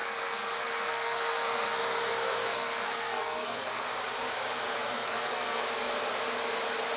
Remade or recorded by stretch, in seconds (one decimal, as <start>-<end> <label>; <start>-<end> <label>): 0.0-1.8 remade; 1.8-2.4 recorded; 2.4-3.8 remade; 3.8-4.9 recorded; 4.9-5.6 remade; 5.6-7.0 recorded